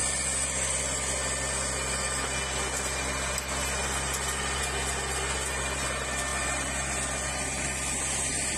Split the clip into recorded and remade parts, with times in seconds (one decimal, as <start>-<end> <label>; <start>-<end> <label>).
0.0-8.6 recorded